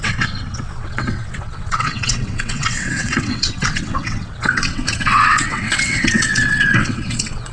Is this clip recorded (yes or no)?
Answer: no